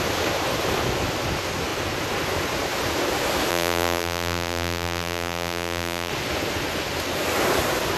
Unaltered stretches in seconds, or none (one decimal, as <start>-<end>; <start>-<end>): 0.0-3.5; 6.1-8.0